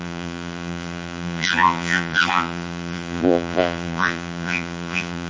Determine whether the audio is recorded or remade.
remade